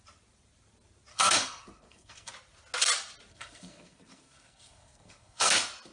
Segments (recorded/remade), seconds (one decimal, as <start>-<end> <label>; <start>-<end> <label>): 0.0-1.1 recorded; 1.1-2.3 remade; 2.3-3.3 recorded; 3.3-5.5 remade; 5.5-5.9 recorded